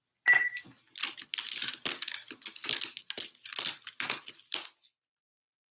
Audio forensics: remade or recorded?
recorded